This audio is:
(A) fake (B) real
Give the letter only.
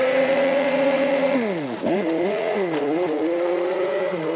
A